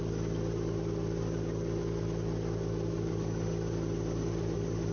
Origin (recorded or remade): recorded